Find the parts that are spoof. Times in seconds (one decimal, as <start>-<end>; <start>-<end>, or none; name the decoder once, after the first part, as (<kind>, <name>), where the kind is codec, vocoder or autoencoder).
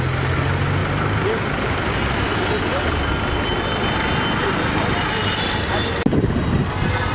none